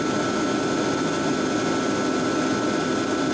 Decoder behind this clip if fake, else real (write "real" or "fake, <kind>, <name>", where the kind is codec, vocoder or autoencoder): real